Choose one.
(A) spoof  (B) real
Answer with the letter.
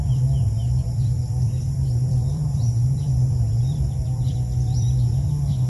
A